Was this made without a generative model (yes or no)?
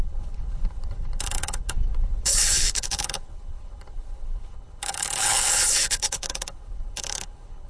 no